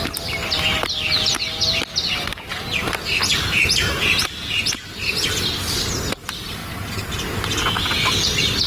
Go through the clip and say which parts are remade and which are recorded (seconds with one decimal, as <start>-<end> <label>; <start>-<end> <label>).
0.0-2.5 recorded; 2.5-3.2 remade; 3.2-8.7 recorded